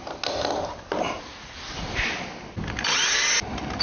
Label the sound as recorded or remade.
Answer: recorded